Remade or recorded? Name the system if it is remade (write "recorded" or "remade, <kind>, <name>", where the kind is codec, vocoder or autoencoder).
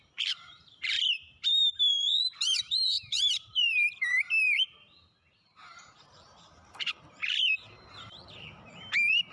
remade, vocoder, BigVGAN v2